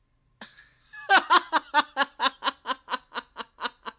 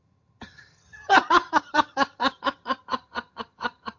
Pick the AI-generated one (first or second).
second